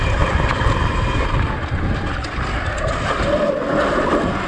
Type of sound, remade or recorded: recorded